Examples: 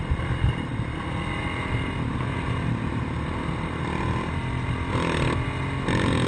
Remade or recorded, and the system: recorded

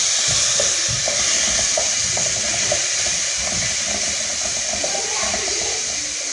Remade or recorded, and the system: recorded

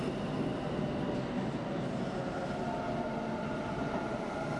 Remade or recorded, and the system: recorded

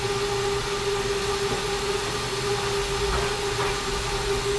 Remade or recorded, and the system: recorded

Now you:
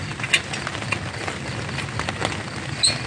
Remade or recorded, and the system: recorded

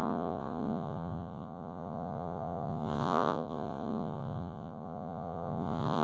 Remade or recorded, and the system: remade, vocoder, Vocos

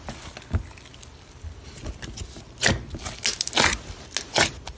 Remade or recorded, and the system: recorded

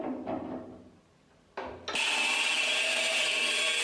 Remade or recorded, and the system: recorded